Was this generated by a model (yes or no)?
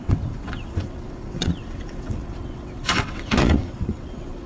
yes